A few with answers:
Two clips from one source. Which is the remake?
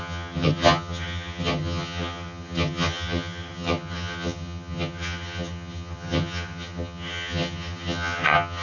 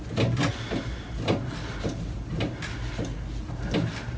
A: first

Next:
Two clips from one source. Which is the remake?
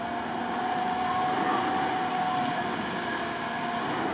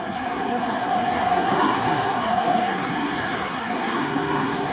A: second